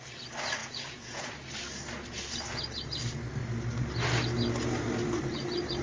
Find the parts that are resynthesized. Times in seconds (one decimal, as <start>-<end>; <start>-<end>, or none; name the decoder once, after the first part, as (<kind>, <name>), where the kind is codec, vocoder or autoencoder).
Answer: 0.6-1.3 (vocoder, Vocos)